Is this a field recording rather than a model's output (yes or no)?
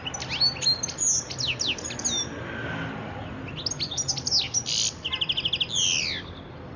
yes